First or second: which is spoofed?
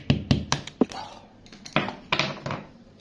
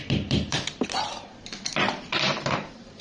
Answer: second